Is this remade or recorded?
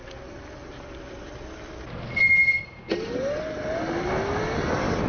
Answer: recorded